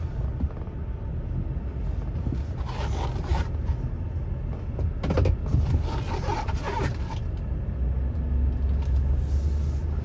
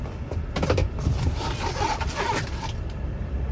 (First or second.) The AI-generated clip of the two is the second